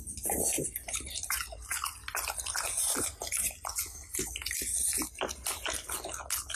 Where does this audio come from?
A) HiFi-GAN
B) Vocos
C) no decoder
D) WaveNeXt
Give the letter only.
C